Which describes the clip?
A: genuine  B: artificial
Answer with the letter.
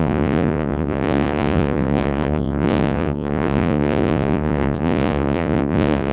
B